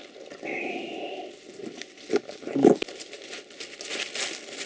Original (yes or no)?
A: yes